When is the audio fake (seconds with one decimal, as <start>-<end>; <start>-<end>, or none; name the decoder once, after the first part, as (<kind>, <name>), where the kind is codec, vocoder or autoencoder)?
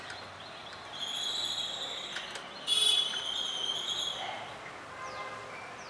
none